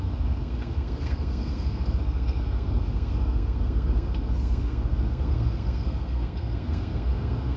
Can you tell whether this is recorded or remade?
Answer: remade